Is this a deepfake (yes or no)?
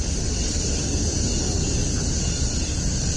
no